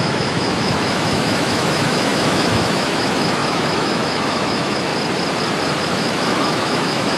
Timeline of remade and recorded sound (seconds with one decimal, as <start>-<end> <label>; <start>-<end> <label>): 0.0-4.9 remade; 4.9-5.9 recorded; 5.9-7.2 remade